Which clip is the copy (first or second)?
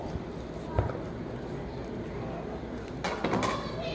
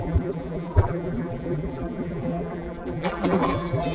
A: second